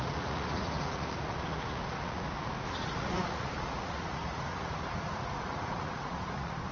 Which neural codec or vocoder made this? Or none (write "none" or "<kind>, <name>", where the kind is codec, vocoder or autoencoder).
vocoder, Vocos